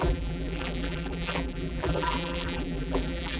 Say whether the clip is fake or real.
fake